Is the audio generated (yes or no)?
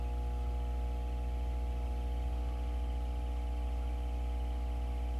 no